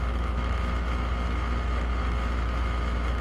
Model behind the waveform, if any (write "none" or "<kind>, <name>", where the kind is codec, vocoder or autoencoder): autoencoder, DAC-VAE